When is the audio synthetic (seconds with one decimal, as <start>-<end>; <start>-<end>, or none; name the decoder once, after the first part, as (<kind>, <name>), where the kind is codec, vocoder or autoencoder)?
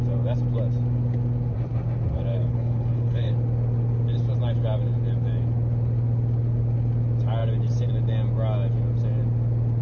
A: 2.3-3.3 (codec, HILCodec)